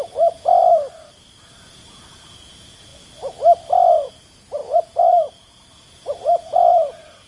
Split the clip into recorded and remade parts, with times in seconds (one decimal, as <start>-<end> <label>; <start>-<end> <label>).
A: 0.0-0.6 remade; 0.6-1.4 recorded; 1.4-2.9 remade; 2.9-3.9 recorded; 3.9-7.3 remade